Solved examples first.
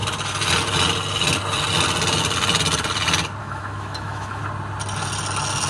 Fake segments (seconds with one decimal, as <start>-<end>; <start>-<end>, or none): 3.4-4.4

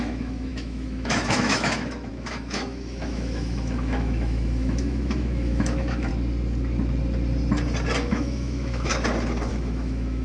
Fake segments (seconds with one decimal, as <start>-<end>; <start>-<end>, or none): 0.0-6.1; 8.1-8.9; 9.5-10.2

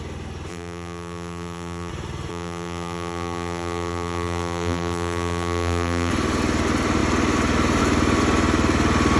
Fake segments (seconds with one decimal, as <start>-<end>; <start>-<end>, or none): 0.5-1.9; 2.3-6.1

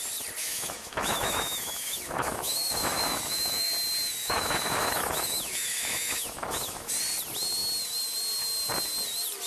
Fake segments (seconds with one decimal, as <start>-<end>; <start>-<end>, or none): 0.4-3.7; 4.2-6.9